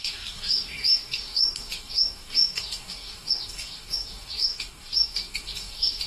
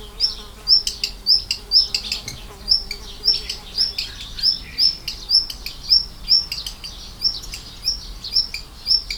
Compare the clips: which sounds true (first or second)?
second